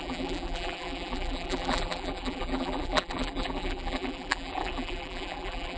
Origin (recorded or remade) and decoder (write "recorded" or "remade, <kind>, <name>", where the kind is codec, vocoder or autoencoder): remade, vocoder, BigVGAN v2